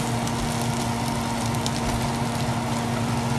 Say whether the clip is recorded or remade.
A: recorded